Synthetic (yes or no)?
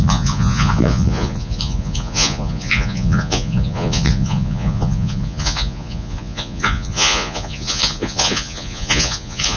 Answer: yes